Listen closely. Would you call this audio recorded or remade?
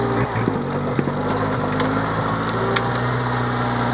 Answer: recorded